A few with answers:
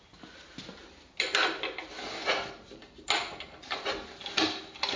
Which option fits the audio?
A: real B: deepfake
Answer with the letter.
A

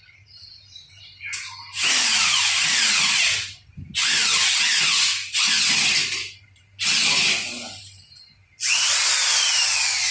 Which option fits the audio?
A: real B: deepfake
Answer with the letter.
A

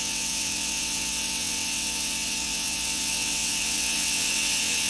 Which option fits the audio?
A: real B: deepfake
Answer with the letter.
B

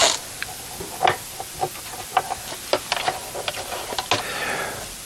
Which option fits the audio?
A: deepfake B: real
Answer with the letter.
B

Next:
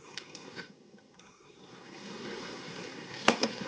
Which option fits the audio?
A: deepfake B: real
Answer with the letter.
A